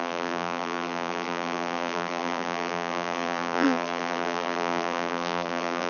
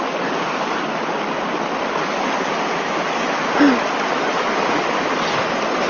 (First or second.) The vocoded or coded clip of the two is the first